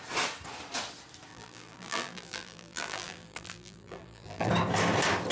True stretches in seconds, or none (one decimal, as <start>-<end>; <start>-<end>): 0.0-1.3; 4.5-5.3